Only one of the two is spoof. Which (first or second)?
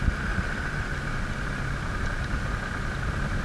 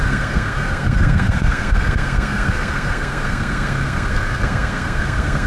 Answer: second